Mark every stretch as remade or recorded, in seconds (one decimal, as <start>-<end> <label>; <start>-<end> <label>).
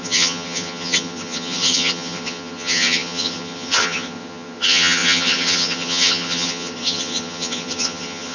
0.0-8.3 remade